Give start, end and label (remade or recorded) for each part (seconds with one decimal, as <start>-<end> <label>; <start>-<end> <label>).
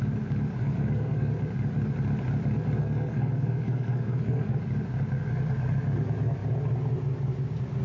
0.0-0.6 recorded; 0.6-1.3 remade; 1.3-2.8 recorded; 2.8-4.6 remade; 4.6-7.8 recorded